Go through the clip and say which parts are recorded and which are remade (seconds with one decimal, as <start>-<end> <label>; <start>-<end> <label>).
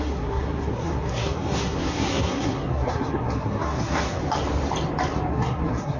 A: 0.0-4.2 remade; 4.2-5.3 recorded; 5.3-6.0 remade